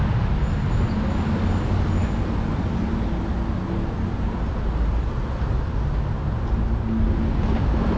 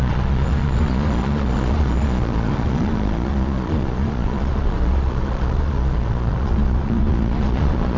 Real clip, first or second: first